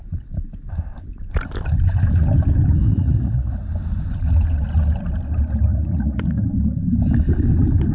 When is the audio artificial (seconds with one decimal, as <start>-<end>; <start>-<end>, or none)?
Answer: 2.8-3.5; 5.7-6.4

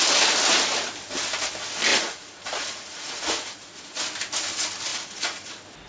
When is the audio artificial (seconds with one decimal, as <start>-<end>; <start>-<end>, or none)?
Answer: 1.9-4.0; 4.9-5.5

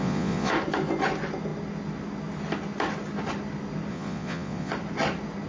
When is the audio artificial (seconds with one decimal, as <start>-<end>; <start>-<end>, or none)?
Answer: 0.0-0.5; 3.9-4.7

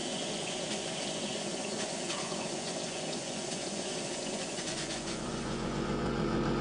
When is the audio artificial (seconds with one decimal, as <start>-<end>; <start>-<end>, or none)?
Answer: 0.0-6.6